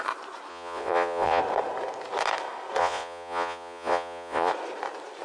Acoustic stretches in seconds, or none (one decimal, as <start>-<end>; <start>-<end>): 0.0-0.5; 1.4-2.8; 4.5-5.2